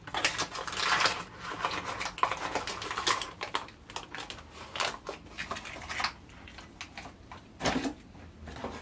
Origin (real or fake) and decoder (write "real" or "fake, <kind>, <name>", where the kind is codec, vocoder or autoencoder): real